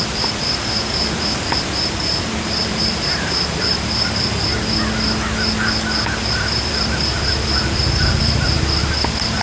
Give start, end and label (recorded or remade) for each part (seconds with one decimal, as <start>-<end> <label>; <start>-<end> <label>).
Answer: 0.0-4.5 remade; 4.5-6.3 recorded; 6.3-9.4 remade